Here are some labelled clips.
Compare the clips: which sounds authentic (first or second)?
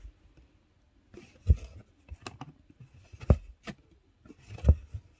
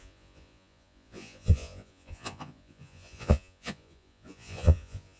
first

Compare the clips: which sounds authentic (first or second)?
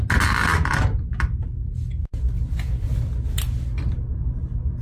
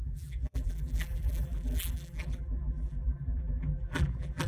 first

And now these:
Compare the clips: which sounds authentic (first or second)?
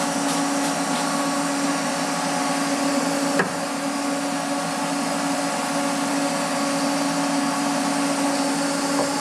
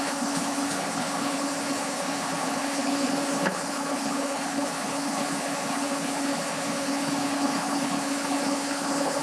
first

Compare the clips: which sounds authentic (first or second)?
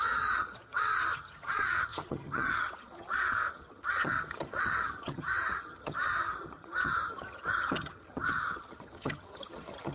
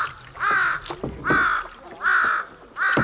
second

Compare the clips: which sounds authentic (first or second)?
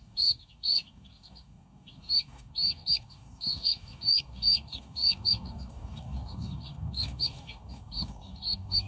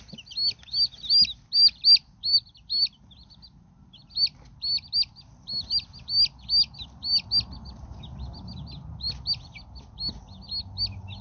second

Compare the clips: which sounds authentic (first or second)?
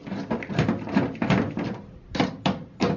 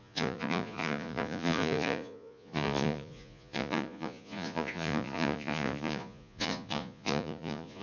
first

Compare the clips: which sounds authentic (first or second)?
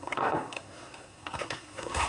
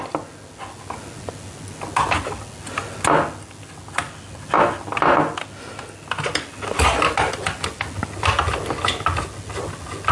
second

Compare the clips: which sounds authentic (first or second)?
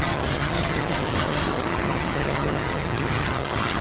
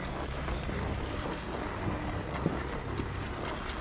second